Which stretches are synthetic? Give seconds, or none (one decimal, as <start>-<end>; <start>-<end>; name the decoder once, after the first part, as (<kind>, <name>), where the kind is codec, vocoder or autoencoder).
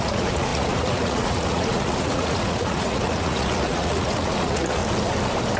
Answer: 0.0-4.8 (vocoder, Vocos)